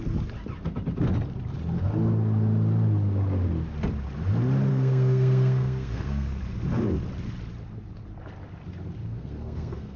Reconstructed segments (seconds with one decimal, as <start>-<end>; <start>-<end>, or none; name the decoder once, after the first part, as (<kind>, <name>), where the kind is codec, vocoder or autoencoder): 4.7-6.4 (codec, SNAC); 9.0-10.0

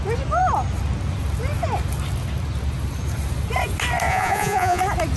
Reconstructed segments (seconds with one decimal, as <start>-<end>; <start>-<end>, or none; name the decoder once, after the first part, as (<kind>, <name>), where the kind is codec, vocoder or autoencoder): 4.1-4.8 (vocoder, Vocos)

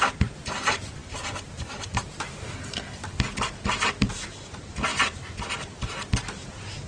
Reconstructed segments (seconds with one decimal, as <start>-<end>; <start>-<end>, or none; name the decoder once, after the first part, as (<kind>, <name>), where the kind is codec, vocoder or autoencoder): 0.0-3.0 (vocoder, BigVGAN v2); 4.1-4.9

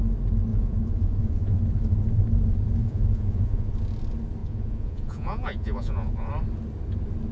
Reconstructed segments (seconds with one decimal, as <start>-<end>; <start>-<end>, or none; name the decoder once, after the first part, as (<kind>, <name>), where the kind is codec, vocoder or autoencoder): 0.5-1.6 (vocoder, Vocos); 2.8-3.7; 4.4-6.3

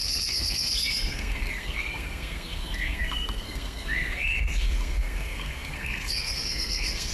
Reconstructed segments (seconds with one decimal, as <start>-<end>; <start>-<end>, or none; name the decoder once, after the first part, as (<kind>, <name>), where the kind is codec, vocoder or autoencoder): 0.0-7.1 (codec, SNAC)